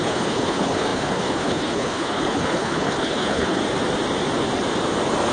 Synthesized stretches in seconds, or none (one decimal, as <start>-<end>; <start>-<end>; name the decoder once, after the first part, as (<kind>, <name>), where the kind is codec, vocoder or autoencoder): 0.0-3.6 (codec, HILCodec)